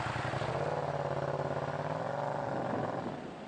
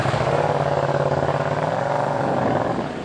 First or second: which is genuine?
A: first